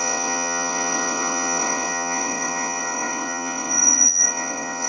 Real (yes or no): no